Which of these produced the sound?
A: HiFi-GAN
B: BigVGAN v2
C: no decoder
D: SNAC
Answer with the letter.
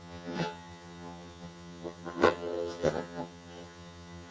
A